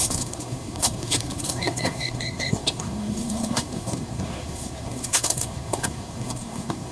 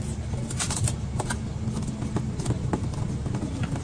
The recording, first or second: second